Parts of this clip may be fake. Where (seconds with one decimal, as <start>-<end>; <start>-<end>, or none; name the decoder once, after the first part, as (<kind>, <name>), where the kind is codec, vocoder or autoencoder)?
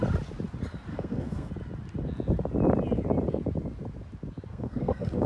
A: 0.9-1.5 (codec, SNAC); 4.5-5.3